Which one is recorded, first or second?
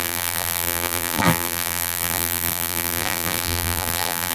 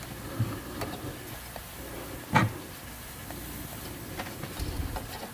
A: second